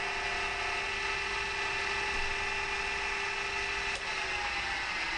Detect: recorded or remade recorded